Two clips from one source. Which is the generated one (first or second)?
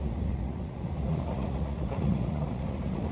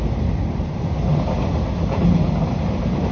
first